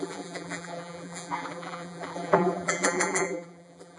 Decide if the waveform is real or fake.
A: fake